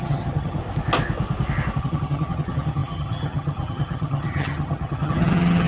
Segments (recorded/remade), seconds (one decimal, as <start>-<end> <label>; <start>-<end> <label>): 0.0-0.6 remade; 0.6-1.8 recorded; 1.8-5.7 remade